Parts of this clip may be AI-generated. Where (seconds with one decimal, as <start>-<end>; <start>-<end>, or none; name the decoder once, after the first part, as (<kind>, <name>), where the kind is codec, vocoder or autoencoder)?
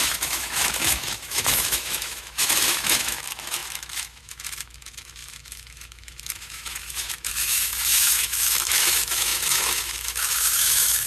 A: 0.0-11.1 (autoencoder, DAC-VAE)